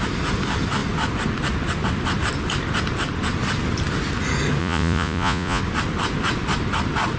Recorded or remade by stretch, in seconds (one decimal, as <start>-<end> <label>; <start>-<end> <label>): 0.0-4.6 recorded; 4.6-5.6 remade; 5.6-7.2 recorded